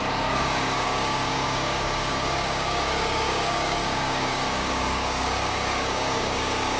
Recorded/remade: remade